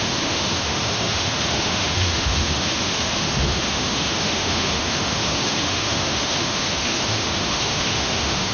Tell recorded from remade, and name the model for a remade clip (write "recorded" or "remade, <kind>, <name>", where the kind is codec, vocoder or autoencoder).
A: remade, autoencoder, DAC-VAE